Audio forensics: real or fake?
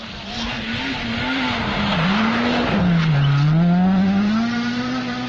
real